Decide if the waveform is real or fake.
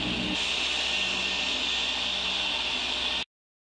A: real